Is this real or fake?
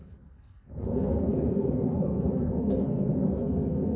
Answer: fake